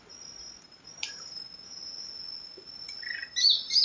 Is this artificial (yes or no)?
no